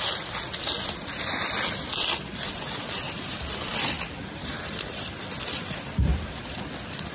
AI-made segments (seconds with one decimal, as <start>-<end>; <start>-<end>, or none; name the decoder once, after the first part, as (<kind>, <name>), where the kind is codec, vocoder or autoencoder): 0.0-1.4 (vocoder, BigVGAN v2); 2.8-7.1